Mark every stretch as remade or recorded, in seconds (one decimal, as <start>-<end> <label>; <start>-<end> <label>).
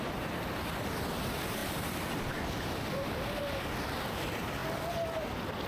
0.0-1.6 recorded; 1.6-3.4 remade; 3.4-4.6 recorded; 4.6-5.2 remade; 5.2-5.7 recorded